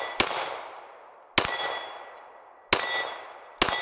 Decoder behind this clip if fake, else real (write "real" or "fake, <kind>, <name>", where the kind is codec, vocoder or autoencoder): real